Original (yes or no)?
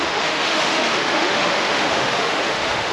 no